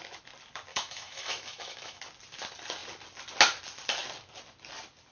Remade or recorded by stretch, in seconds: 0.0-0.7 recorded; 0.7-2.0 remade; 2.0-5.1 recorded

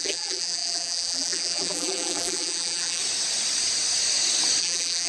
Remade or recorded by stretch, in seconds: 0.0-3.0 remade; 3.0-4.6 recorded; 4.6-5.1 remade

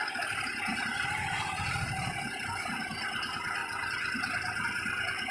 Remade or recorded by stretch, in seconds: 0.0-0.7 recorded; 0.7-3.2 remade; 3.2-3.6 recorded; 3.6-4.6 remade; 4.6-5.3 recorded

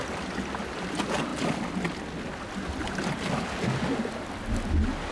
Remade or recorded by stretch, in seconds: 0.0-5.1 recorded

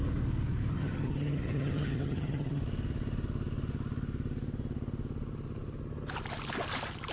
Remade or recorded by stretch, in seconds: 0.0-0.7 recorded; 0.7-2.6 remade; 2.6-7.1 recorded

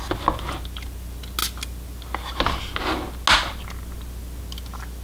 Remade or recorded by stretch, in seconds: 0.0-5.0 recorded

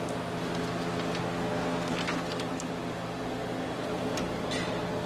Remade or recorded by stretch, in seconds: 0.0-1.2 recorded; 1.2-2.0 remade; 2.0-5.1 recorded

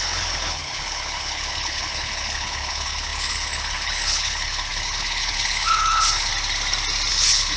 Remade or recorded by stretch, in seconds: 0.0-6.3 remade; 6.3-7.1 recorded; 7.1-7.6 remade